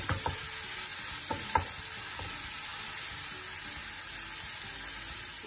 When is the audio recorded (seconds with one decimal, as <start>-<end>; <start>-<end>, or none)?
0.0-5.5